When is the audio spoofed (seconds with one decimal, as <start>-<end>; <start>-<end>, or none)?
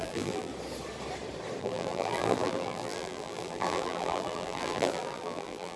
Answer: 0.0-0.5; 1.6-5.8